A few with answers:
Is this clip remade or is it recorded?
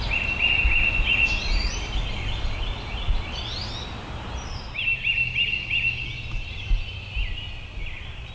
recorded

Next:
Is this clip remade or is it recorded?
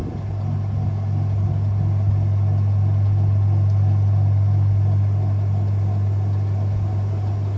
recorded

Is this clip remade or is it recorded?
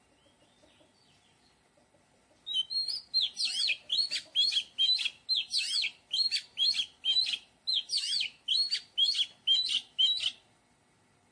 recorded